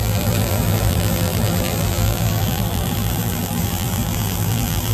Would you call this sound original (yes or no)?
no